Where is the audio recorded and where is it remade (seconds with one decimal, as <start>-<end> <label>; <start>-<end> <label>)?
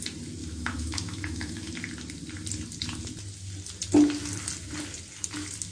0.0-0.4 recorded; 0.4-1.7 remade; 1.7-5.7 recorded